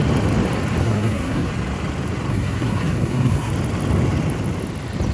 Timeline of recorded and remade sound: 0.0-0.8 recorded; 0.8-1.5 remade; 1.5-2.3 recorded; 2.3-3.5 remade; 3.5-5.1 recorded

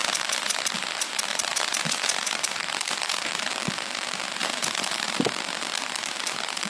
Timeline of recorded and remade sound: 0.0-0.6 remade; 0.6-1.3 recorded; 1.3-3.6 remade; 3.6-4.4 recorded; 4.4-5.3 remade; 5.3-6.7 recorded

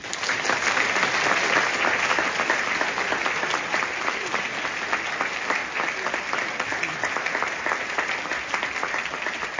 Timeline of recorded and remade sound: 0.0-9.6 recorded

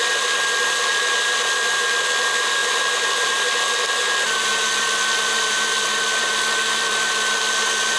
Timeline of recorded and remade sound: 0.0-0.9 recorded; 0.9-8.0 remade

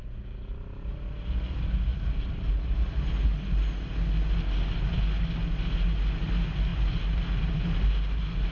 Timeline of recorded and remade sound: 0.0-8.5 recorded

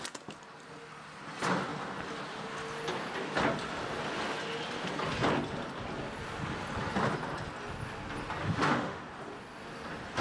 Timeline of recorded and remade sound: 0.0-8.4 recorded; 8.4-9.0 remade; 9.0-10.2 recorded

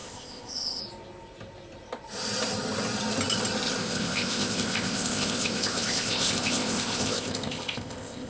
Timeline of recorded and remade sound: 0.0-0.8 remade; 0.8-3.8 recorded; 3.8-8.3 remade

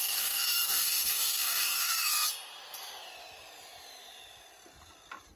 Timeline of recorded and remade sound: 0.0-2.1 remade; 2.1-5.4 recorded